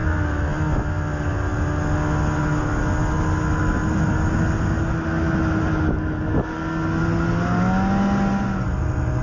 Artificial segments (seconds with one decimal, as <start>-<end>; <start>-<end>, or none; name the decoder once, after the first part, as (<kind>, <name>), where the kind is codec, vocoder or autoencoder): none